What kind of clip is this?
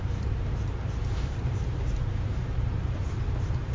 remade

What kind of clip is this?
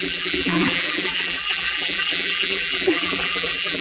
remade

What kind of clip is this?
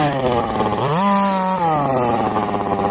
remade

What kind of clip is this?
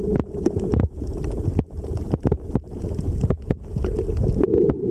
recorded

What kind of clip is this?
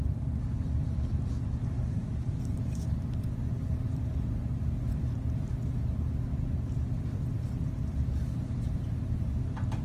recorded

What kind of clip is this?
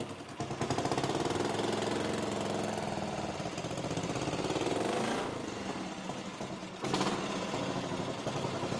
recorded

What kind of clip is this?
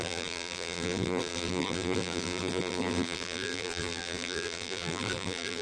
remade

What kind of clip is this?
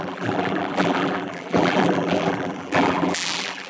remade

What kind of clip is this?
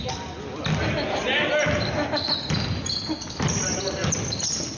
recorded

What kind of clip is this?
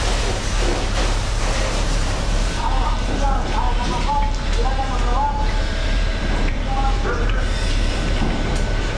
remade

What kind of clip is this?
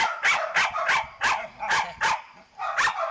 recorded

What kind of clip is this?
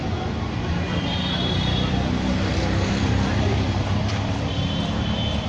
remade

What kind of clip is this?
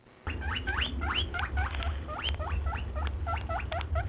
recorded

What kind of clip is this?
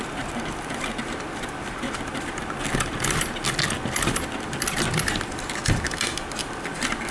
recorded